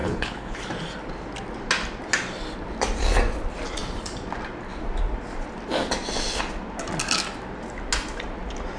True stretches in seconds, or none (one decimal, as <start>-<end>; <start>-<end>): 0.6-8.8